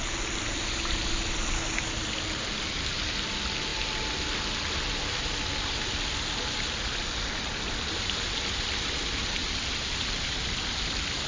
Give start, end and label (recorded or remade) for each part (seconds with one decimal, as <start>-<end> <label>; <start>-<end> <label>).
0.0-11.3 recorded